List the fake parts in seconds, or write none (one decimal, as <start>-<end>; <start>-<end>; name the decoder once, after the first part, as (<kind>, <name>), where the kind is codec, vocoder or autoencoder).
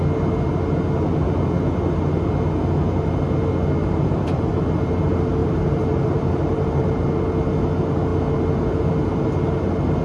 3.8-4.5 (vocoder, BigVGAN v2); 5.4-7.2